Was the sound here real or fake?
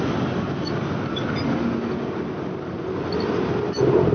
real